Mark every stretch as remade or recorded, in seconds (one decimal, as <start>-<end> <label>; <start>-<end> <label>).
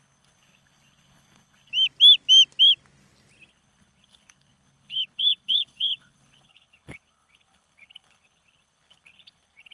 0.0-1.7 remade; 1.7-3.5 recorded; 3.5-9.7 remade